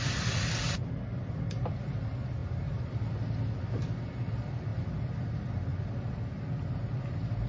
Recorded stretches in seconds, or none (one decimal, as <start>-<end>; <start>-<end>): 0.0-7.5